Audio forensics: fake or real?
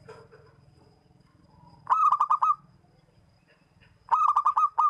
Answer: real